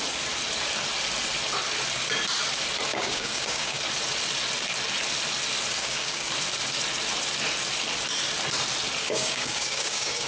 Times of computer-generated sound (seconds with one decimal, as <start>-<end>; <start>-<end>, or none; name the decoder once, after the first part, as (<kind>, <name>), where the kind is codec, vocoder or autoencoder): 2.9-3.8 (codec, DAC); 5.8-6.3; 9.0-10.3